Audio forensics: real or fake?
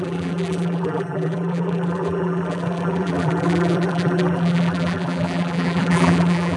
fake